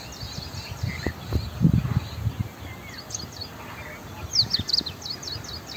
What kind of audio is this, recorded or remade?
recorded